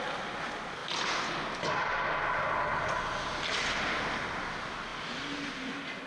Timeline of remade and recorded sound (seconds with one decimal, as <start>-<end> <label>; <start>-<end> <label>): 0.0-6.1 recorded